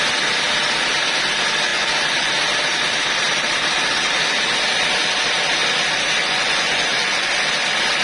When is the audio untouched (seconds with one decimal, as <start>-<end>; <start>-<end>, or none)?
0.0-1.7; 2.3-6.2; 7.3-8.0